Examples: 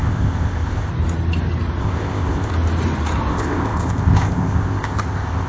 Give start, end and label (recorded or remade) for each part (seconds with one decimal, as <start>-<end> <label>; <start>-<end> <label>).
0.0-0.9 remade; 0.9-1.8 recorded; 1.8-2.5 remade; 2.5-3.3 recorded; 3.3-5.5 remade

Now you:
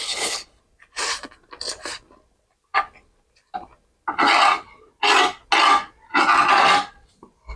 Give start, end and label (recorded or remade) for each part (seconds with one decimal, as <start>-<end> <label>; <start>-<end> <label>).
0.0-0.6 remade; 0.6-7.6 recorded

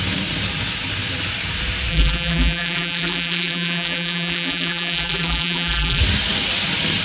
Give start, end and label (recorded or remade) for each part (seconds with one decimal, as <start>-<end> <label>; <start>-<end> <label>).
0.0-1.9 recorded; 1.9-6.0 remade; 6.0-7.0 recorded

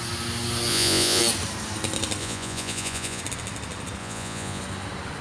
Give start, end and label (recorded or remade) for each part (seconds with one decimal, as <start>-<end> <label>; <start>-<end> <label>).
0.0-0.7 recorded; 0.7-1.2 remade; 1.2-2.2 recorded; 2.2-3.2 remade; 3.2-4.0 recorded; 4.0-4.6 remade; 4.6-5.2 recorded